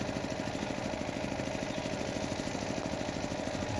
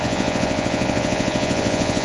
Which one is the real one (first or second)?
first